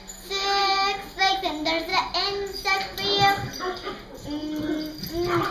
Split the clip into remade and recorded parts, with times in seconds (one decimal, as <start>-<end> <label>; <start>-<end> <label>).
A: 0.0-5.5 recorded